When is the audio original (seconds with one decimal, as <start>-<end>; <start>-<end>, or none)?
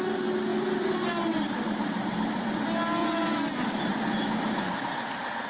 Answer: 0.0-0.5; 2.5-3.0; 3.5-5.5